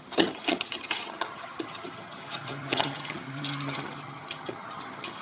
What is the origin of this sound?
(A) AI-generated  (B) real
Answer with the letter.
A